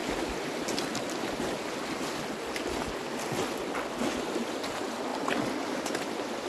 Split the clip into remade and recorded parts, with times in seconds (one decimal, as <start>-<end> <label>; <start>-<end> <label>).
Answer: 0.0-6.5 recorded